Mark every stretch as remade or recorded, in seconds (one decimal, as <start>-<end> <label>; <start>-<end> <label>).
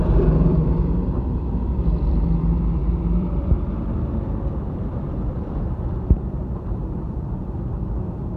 0.0-2.8 recorded; 2.8-7.4 remade; 7.4-8.4 recorded